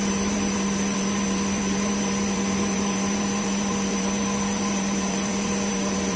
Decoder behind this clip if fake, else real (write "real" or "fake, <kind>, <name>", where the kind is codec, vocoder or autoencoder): fake, vocoder, BigVGAN v2